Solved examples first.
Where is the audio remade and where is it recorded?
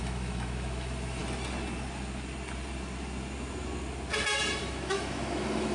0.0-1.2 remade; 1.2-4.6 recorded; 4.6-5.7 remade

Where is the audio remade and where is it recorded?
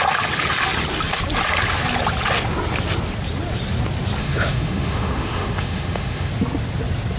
0.0-4.2 recorded; 4.2-6.3 remade; 6.3-7.2 recorded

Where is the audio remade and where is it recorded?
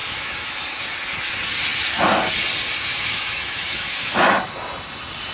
0.0-0.8 remade; 0.8-2.9 recorded; 2.9-4.3 remade; 4.3-5.3 recorded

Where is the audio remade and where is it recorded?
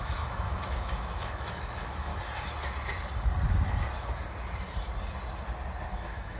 0.0-2.1 remade; 2.1-5.9 recorded; 5.9-6.4 remade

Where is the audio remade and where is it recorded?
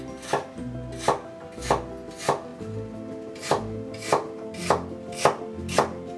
0.0-6.2 recorded